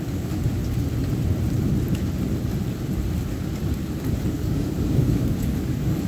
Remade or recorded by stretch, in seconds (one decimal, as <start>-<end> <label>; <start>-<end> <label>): 0.0-0.6 remade; 0.6-4.3 recorded; 4.3-6.1 remade